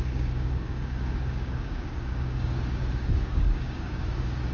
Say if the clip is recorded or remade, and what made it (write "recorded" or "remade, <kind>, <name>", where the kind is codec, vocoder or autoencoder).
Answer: remade, codec, DAC